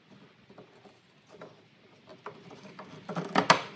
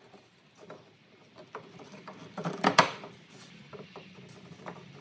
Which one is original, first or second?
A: first